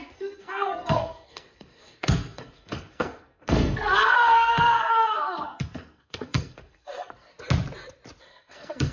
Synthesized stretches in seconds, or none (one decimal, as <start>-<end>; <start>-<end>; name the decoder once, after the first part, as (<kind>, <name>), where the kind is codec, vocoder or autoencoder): 0.0-7.3 (codec, SNAC); 8.2-8.9